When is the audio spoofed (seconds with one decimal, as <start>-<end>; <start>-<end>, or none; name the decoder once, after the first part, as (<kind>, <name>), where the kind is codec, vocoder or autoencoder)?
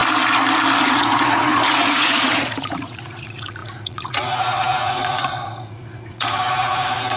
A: 0.8-7.2 (vocoder, Vocos)